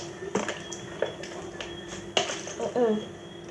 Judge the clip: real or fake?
real